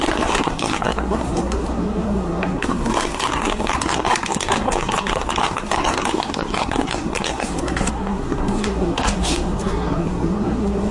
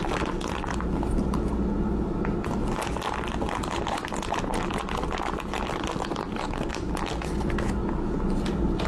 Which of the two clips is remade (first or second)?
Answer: first